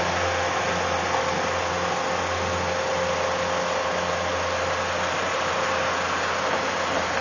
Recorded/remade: recorded